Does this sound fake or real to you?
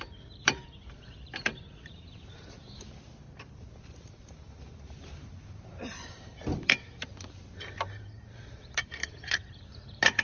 fake